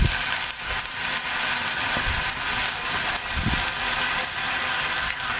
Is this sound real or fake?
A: real